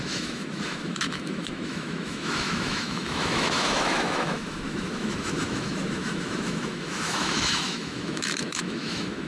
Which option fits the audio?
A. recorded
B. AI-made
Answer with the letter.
B